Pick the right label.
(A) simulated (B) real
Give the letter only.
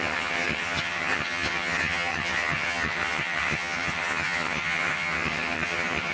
A